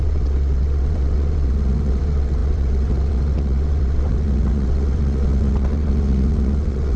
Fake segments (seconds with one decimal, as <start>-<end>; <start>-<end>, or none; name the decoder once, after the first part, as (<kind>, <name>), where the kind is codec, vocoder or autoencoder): 0.0-7.0 (vocoder, WaveNeXt)